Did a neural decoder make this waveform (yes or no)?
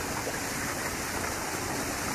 no